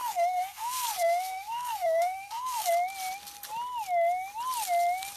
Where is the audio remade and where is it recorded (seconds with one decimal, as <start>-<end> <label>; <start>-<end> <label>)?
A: 0.0-2.7 remade; 2.7-5.2 recorded